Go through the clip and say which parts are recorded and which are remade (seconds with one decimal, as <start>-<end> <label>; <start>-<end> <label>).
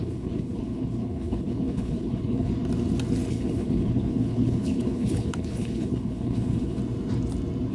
0.0-2.5 remade; 2.5-3.3 recorded; 3.3-6.8 remade; 6.8-7.7 recorded